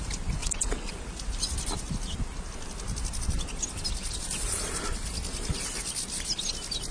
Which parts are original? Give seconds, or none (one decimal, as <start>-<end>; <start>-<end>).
0.0-0.4; 0.9-6.9